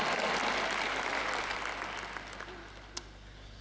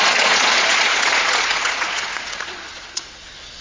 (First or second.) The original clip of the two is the first